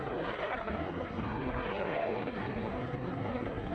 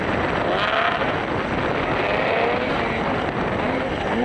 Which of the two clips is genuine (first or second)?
second